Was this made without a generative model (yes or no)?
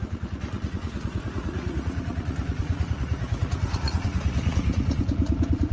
no